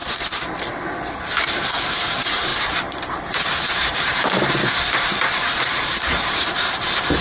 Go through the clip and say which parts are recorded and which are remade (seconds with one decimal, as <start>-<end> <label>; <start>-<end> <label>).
0.0-1.3 recorded; 1.3-7.2 remade